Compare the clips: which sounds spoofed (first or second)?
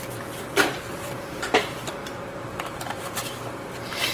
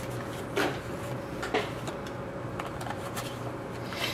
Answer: first